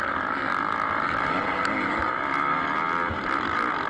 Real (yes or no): yes